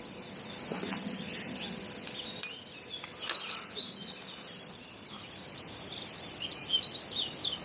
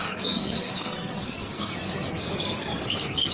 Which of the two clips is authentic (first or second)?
first